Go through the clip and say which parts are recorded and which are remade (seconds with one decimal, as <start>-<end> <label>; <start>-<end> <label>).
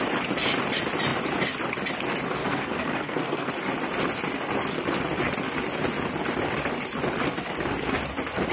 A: 0.0-2.4 recorded; 2.4-3.5 remade; 3.5-8.5 recorded